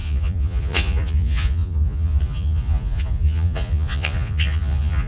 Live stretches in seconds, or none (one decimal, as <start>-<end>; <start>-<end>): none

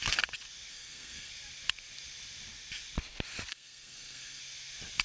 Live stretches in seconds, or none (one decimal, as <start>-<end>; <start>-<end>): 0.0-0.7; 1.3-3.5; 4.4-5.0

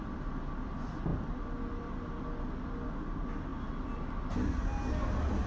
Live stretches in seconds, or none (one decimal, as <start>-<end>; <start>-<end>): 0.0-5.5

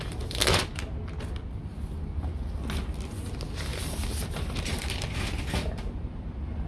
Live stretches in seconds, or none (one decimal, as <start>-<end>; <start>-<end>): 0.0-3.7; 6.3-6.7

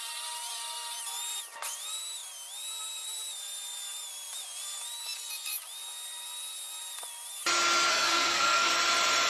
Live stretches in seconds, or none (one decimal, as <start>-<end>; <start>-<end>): 0.0-7.9; 8.7-9.3